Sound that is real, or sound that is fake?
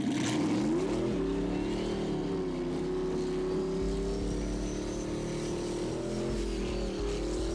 real